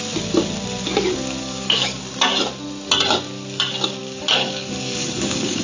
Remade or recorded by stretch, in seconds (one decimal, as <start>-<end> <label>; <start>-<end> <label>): 0.0-1.4 recorded; 1.4-2.0 remade; 2.0-4.0 recorded; 4.0-5.6 remade